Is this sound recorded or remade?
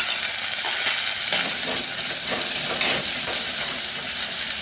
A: recorded